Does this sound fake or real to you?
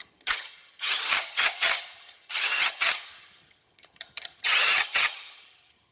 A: fake